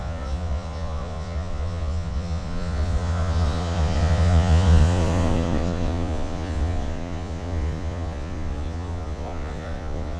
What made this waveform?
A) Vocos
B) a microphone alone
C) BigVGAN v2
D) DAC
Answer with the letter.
A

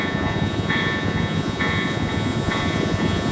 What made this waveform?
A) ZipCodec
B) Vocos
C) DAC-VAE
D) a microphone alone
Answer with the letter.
B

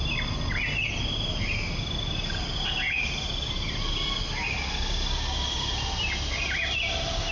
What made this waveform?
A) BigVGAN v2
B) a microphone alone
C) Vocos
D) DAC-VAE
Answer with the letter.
B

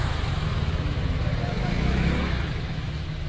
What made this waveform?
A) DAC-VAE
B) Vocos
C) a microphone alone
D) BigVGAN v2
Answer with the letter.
A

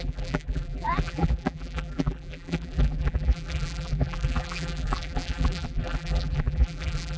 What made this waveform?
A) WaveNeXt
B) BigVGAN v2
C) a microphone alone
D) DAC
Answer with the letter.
B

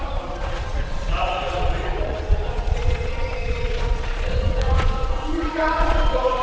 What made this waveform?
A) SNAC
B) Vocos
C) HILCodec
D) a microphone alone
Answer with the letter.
B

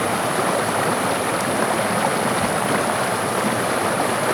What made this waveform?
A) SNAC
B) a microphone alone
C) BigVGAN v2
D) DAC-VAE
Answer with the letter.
B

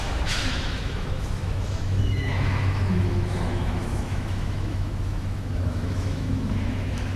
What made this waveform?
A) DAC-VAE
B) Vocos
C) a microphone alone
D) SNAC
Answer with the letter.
A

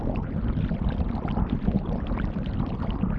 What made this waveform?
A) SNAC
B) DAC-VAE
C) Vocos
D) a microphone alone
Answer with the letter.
D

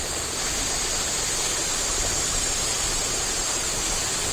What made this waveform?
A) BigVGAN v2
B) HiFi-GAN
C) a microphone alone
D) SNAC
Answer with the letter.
C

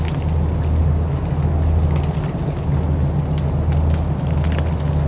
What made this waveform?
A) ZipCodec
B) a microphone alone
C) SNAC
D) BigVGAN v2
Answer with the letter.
B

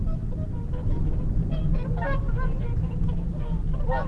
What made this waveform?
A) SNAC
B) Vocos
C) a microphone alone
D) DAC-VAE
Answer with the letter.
C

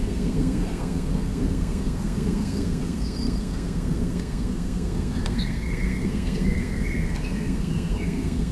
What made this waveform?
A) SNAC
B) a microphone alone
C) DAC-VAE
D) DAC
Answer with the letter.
A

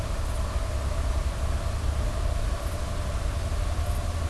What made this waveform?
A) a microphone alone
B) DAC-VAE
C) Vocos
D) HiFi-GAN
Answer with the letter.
A